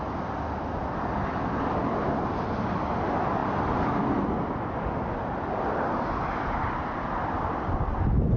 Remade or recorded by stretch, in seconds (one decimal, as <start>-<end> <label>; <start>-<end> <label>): 0.0-8.4 recorded